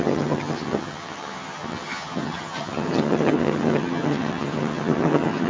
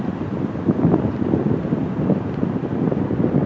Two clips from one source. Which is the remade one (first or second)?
first